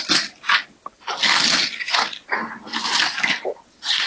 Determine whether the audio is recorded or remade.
recorded